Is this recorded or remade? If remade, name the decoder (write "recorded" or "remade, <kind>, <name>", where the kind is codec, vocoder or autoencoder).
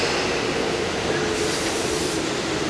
recorded